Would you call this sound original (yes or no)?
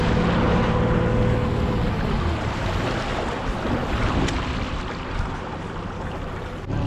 yes